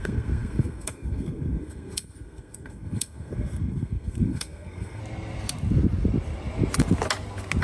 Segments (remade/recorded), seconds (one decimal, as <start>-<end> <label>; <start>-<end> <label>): 0.0-5.0 remade; 5.0-7.6 recorded